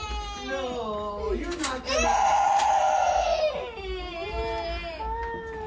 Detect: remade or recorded recorded